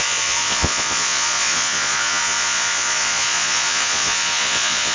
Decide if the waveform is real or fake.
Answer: fake